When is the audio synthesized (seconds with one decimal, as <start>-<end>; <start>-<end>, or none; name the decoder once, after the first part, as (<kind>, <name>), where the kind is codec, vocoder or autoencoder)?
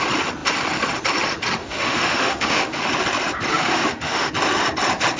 1.6-2.9 (autoencoder, DAC-VAE); 3.5-4.3